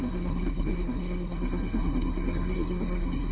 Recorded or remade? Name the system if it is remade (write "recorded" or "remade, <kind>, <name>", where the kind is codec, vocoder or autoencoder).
remade, codec, SNAC